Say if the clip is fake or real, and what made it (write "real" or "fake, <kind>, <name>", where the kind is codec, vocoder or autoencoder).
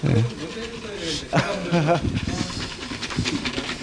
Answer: real